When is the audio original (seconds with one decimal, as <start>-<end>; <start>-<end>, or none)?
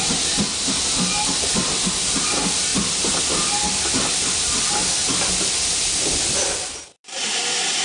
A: 0.0-7.8